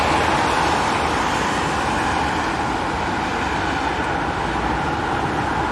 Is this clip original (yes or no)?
yes